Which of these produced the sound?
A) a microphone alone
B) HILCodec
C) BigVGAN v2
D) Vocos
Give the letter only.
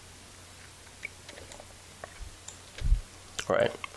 A